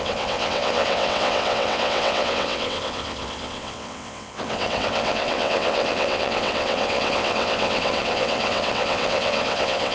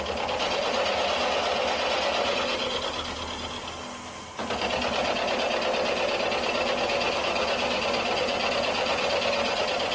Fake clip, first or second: first